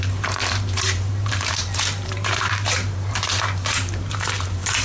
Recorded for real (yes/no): no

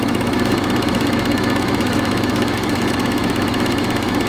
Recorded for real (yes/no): no